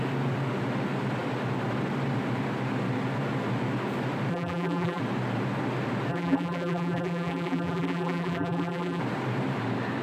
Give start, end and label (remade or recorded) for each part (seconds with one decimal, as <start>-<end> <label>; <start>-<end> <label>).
0.0-4.3 recorded; 4.3-5.0 remade; 5.0-6.1 recorded; 6.1-9.0 remade; 9.0-10.0 recorded